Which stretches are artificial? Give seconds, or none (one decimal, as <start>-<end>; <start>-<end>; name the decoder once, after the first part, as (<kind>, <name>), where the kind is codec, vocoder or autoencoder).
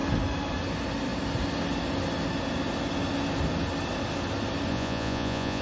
4.7-5.6 (vocoder, Vocos)